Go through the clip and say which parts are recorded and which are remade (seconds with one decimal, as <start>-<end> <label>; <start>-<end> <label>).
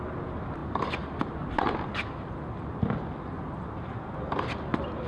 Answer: 0.0-5.1 recorded